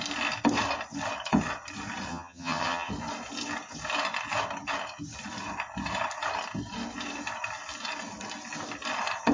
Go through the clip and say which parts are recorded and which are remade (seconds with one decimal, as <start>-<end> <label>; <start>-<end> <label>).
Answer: 0.0-2.1 recorded; 2.1-2.9 remade; 2.9-9.3 recorded